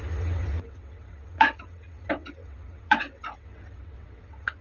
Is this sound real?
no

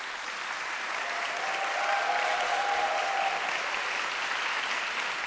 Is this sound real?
yes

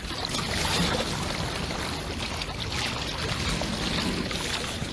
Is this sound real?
yes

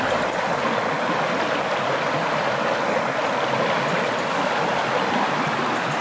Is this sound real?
yes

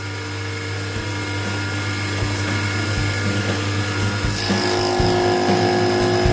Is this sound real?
yes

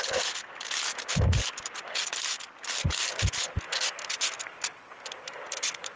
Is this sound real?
yes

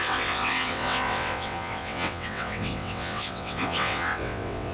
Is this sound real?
no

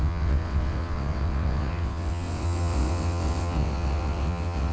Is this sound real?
no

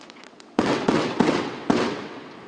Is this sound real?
no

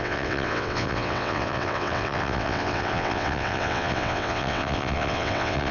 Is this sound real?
no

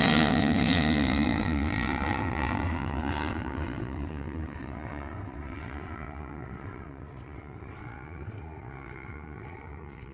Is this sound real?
no